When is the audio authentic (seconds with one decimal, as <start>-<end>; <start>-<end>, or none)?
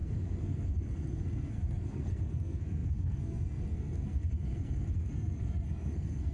none